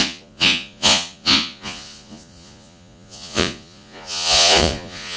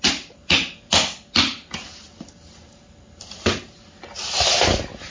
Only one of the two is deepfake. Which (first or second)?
first